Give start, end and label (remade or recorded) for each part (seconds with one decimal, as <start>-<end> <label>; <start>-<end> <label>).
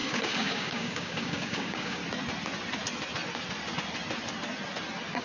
0.0-2.0 remade; 2.0-5.2 recorded